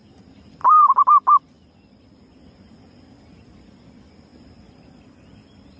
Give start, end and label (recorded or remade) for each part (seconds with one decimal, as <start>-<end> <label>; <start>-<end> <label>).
0.0-5.8 recorded